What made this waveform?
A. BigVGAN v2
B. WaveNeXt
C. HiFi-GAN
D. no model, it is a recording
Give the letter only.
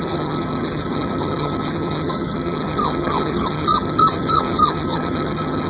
C